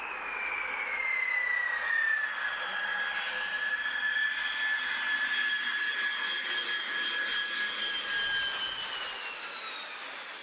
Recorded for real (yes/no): yes